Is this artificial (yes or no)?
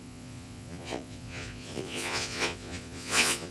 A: yes